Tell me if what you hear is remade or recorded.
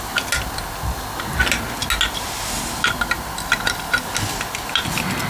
recorded